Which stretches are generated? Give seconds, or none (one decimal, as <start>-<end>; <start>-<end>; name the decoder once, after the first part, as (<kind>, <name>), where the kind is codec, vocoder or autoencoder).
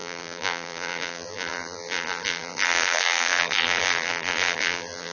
0.0-5.1 (vocoder, BigVGAN v2)